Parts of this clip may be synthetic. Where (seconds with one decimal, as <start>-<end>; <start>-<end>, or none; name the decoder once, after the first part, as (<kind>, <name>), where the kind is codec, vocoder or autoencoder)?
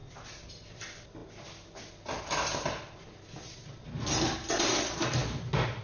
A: 0.0-1.2 (vocoder, BigVGAN v2); 4.5-5.2